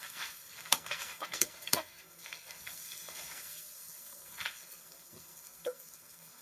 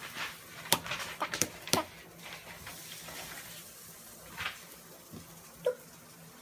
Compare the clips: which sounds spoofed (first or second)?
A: first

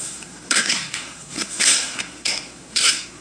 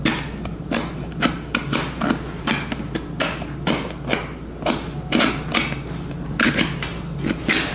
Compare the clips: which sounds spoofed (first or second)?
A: first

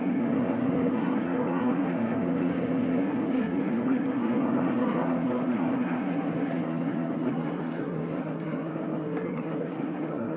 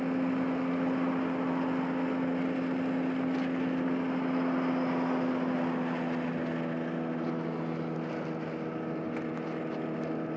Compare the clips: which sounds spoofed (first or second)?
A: first